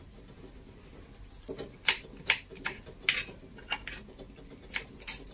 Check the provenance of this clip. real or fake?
real